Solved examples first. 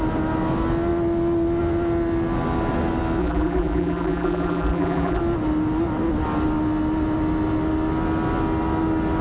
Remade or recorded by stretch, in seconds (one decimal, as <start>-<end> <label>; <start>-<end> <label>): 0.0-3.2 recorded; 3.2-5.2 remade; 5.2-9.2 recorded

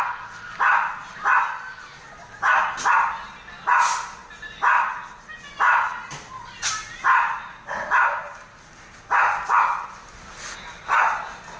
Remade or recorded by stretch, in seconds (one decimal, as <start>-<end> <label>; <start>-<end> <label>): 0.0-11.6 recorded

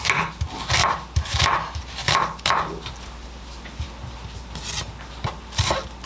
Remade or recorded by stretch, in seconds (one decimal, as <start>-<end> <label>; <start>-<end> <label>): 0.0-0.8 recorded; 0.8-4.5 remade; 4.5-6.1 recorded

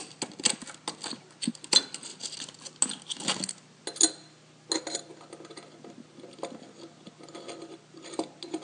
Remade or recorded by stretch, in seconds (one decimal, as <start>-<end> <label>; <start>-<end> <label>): 0.0-8.6 recorded

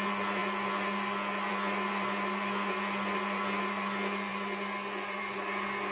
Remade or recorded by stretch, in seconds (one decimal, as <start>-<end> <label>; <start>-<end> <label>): 0.0-5.9 recorded

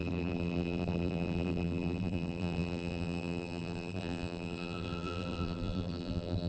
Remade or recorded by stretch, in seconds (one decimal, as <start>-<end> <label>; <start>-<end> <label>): 0.0-6.5 remade